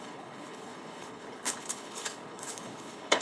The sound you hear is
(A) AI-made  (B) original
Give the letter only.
A